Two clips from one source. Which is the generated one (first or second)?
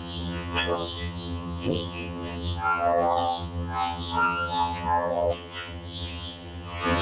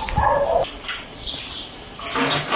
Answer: first